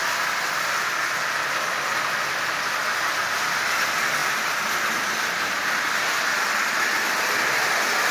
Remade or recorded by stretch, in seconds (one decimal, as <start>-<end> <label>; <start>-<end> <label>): 0.0-8.1 recorded